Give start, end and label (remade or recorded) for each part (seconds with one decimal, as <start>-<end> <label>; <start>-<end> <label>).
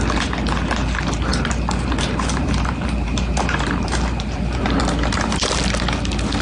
0.0-1.3 recorded; 1.3-4.8 remade; 4.8-6.4 recorded